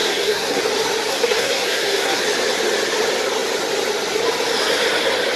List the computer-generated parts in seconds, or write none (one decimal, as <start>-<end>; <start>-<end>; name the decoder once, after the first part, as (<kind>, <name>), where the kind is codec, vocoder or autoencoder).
0.0-0.6 (codec, SNAC); 1.1-2.2